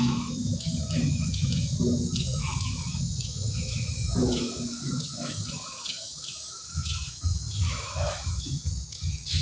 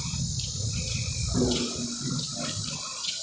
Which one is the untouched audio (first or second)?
second